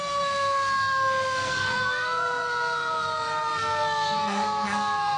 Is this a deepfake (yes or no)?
yes